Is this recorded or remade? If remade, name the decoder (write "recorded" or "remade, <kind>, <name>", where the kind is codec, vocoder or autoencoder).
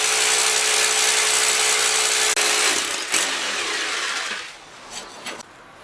recorded